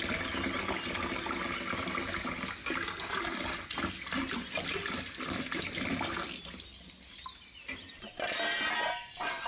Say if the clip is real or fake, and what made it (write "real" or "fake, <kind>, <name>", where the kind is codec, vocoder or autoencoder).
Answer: real